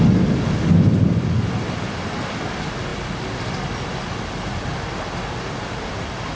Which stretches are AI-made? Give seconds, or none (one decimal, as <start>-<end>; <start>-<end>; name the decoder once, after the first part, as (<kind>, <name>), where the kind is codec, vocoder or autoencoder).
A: none